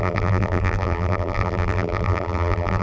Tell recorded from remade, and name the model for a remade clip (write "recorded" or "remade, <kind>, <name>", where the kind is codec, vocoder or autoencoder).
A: remade, vocoder, BigVGAN v2